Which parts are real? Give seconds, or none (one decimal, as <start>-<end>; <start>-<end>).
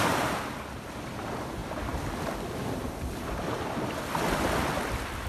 0.0-5.3